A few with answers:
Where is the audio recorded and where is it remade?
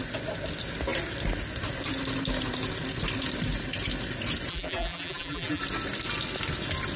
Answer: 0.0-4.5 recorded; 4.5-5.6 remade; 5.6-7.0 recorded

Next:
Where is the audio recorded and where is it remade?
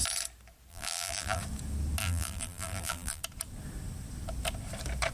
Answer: 0.0-0.7 recorded; 0.7-1.4 remade; 1.4-2.0 recorded; 2.0-3.2 remade; 3.2-5.1 recorded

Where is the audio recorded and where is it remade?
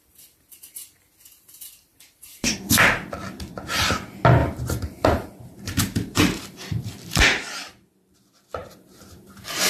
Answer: 0.0-1.9 recorded; 1.9-2.5 remade; 2.5-4.4 recorded; 4.4-6.9 remade; 6.9-8.6 recorded; 8.6-9.7 remade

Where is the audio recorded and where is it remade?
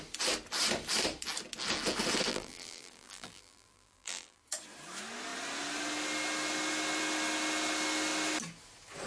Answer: 0.0-2.3 recorded; 2.3-4.4 remade; 4.4-9.1 recorded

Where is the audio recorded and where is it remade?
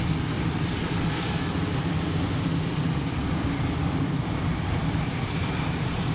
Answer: 0.0-6.1 remade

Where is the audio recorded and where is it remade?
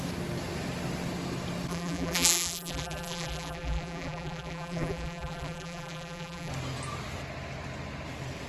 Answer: 0.0-1.7 recorded; 1.7-6.5 remade; 6.5-8.5 recorded